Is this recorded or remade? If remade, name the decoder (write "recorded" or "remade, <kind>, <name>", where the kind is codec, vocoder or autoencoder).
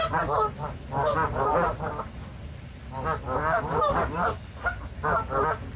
recorded